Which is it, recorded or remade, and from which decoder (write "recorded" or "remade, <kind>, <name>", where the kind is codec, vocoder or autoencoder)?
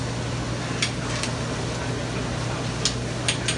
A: recorded